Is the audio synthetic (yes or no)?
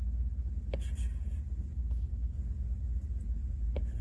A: no